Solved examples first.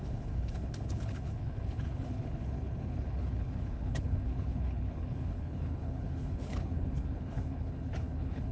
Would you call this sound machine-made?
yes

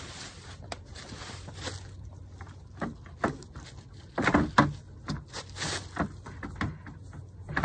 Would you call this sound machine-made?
no